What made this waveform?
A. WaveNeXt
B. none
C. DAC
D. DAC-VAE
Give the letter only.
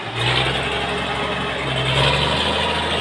B